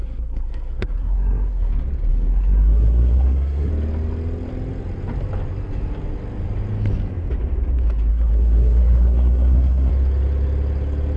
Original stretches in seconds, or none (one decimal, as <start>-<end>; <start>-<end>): 1.7-2.1; 3.7-8.1; 9.9-11.2